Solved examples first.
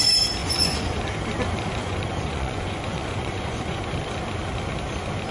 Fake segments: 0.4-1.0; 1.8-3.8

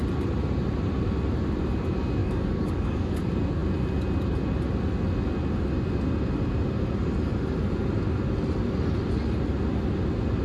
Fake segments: 2.2-3.2